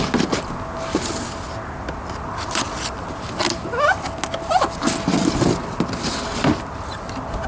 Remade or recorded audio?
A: recorded